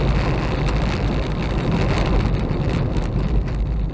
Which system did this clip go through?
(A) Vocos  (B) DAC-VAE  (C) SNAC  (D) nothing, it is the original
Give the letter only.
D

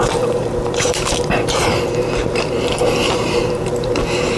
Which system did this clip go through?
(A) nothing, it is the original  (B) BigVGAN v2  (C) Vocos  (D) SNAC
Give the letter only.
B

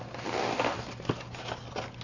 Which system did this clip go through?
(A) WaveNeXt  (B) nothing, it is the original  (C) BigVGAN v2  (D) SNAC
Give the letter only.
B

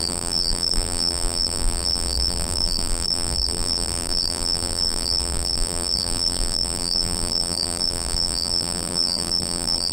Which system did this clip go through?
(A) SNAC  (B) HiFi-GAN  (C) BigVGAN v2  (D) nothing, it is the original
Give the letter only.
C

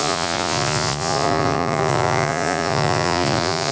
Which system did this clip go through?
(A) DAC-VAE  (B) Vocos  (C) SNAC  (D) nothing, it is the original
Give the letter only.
B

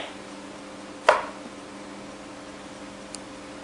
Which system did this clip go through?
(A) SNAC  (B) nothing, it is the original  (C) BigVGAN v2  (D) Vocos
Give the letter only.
B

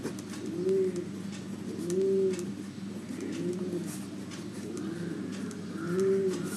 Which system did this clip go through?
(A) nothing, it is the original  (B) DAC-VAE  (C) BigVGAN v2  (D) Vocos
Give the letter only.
A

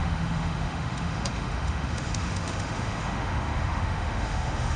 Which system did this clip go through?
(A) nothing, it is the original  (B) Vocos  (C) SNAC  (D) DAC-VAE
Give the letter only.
D